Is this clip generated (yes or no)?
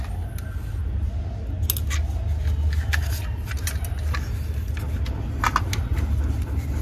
no